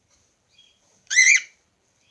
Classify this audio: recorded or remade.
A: remade